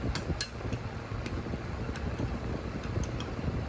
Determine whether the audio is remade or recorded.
recorded